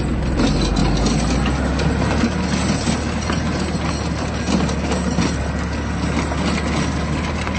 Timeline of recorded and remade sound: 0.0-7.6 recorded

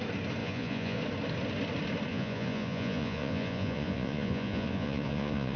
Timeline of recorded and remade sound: 0.0-0.4 recorded; 0.4-1.0 remade; 1.0-2.1 recorded; 2.1-5.6 remade

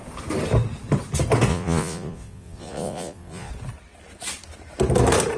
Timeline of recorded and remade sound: 0.0-1.5 recorded; 1.5-3.5 remade; 3.5-5.4 recorded

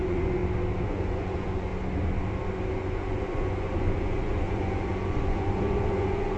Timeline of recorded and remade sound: 0.0-0.4 remade; 0.4-0.9 recorded; 0.9-1.7 remade; 1.7-2.7 recorded; 2.7-6.4 remade

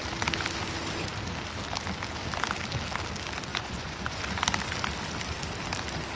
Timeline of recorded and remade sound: 0.0-3.5 recorded; 3.5-4.2 remade; 4.2-6.2 recorded